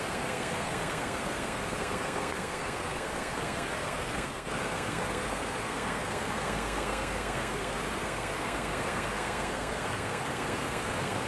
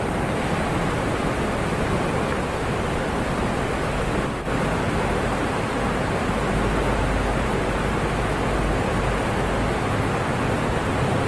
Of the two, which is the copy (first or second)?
first